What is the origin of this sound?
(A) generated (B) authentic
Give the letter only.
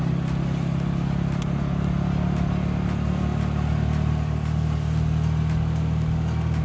B